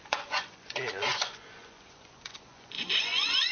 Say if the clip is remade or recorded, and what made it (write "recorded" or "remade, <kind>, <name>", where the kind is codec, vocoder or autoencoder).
remade, vocoder, Vocos